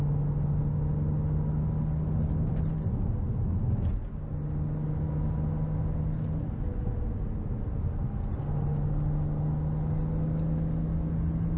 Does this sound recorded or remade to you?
recorded